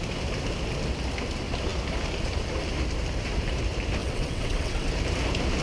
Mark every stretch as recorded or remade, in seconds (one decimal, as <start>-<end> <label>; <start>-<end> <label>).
0.0-4.0 recorded; 4.0-4.9 remade; 4.9-5.6 recorded